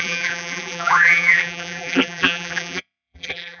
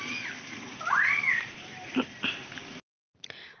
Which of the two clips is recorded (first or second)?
second